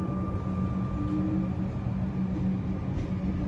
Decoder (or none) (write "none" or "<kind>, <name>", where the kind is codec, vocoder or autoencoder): none